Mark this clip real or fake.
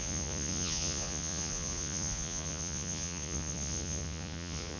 fake